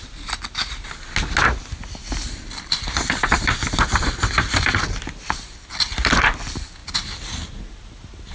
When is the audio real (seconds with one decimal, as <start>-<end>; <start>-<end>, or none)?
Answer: 0.0-8.3